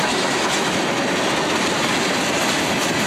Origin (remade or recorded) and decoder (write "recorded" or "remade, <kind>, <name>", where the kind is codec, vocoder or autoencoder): recorded